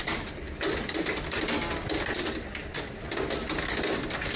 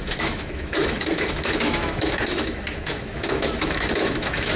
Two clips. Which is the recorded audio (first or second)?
first